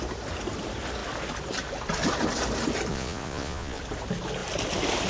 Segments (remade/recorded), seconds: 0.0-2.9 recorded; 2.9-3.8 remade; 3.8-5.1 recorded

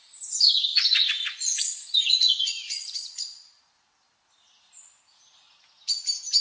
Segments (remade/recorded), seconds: 0.0-0.7 recorded; 0.7-3.6 remade; 3.6-6.4 recorded

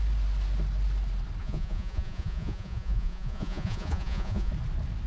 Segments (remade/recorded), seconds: 0.0-1.4 recorded; 1.4-4.5 remade; 4.5-5.1 recorded